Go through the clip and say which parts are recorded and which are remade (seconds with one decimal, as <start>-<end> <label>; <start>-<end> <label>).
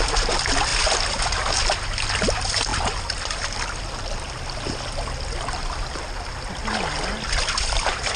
0.0-8.2 recorded